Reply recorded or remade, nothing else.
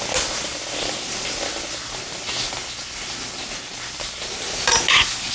recorded